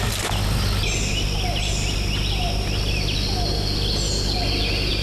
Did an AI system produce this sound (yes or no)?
no